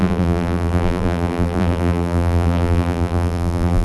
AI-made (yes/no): yes